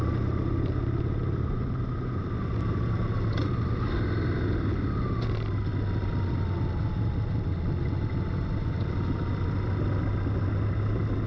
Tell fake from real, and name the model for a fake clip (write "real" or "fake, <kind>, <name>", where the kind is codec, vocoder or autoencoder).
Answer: real